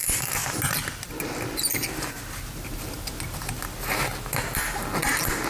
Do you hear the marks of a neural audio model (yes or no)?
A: no